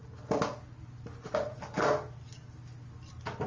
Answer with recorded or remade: recorded